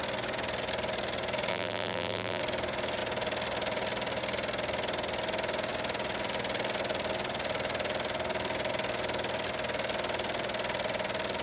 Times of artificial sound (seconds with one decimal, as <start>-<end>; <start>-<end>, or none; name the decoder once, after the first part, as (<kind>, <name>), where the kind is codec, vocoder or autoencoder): 1.5-2.4 (vocoder, BigVGAN v2)